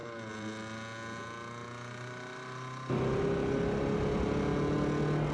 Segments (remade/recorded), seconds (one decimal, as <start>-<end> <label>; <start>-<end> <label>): 0.0-5.3 recorded